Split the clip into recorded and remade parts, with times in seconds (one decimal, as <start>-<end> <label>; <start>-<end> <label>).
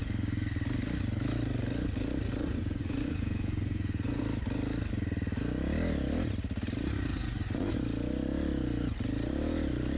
0.0-2.4 recorded; 2.4-4.2 remade; 4.2-7.1 recorded; 7.1-7.7 remade; 7.7-10.0 recorded